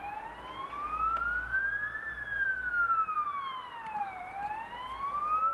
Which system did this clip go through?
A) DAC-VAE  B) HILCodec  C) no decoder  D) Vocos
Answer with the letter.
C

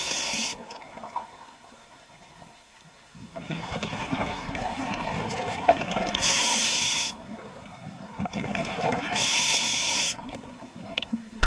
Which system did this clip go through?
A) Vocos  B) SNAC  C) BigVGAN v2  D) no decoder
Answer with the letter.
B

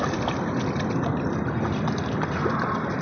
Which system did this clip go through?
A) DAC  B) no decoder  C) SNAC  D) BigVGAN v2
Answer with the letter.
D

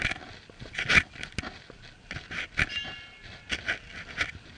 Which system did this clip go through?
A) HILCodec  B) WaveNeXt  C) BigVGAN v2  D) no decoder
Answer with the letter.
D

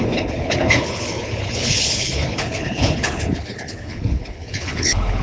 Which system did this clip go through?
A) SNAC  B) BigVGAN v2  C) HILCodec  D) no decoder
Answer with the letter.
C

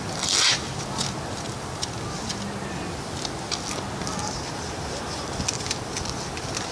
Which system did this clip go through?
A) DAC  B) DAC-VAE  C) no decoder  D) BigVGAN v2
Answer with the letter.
C